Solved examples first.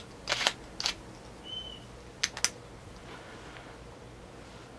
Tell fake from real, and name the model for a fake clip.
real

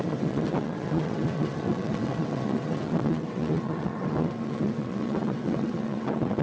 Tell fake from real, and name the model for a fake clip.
fake, vocoder, WaveNeXt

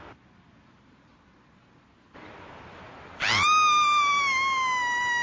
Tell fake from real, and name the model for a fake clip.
real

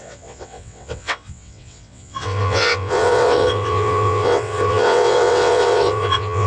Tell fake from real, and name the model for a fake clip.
fake, vocoder, WaveNeXt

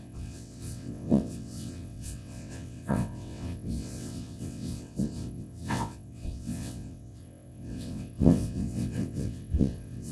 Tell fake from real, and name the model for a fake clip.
fake, vocoder, WaveNeXt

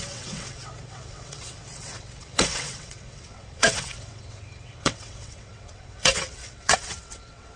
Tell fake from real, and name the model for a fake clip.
fake, vocoder, WaveNeXt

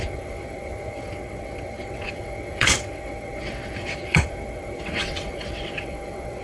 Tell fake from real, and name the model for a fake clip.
fake, vocoder, WaveNeXt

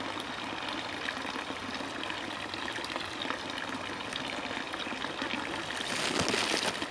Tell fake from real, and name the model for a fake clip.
real